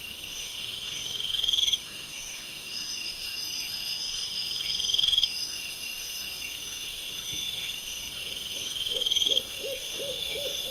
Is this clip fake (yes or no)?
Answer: yes